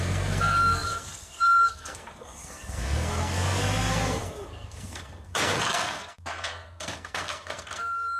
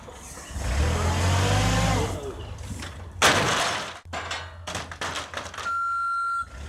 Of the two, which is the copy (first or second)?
first